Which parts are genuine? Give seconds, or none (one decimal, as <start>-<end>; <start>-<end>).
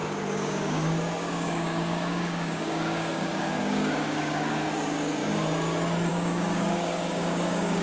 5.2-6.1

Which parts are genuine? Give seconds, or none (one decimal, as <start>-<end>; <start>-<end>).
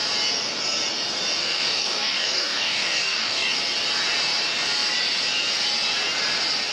0.0-1.4; 3.6-6.7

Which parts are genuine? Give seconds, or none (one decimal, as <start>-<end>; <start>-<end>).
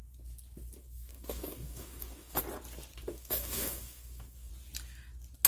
0.0-0.8; 2.4-3.1; 4.5-5.5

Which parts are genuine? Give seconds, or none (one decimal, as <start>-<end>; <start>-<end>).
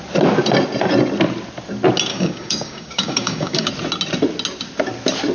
0.0-2.1; 3.7-5.3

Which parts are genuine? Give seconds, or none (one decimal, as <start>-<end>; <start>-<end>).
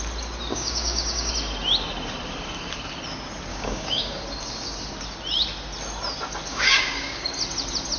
0.0-0.5; 1.3-3.5; 4.2-6.5; 7.3-8.0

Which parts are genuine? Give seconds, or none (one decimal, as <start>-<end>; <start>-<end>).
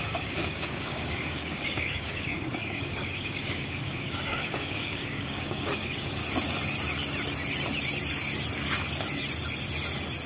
6.2-10.3